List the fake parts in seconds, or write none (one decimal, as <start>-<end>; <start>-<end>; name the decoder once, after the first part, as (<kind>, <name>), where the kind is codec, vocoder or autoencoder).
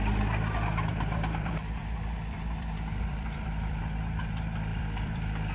0.9-3.8 (vocoder, BigVGAN v2); 4.7-5.5